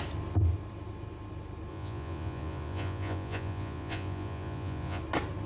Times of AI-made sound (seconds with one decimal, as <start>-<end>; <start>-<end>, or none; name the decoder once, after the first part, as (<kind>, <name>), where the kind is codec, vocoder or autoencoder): 1.7-5.0 (vocoder, Vocos)